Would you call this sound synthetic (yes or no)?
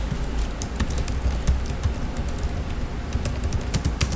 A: no